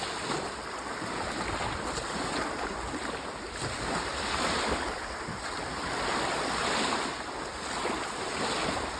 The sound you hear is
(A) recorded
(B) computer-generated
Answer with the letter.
A